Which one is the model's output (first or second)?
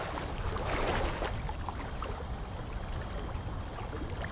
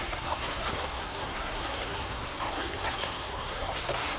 second